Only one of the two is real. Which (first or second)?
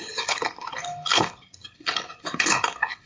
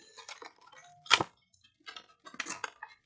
second